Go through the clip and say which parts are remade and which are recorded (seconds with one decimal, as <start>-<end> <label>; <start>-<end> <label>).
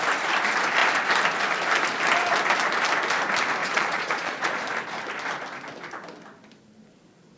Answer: 0.0-3.6 recorded; 3.6-4.6 remade; 4.6-7.4 recorded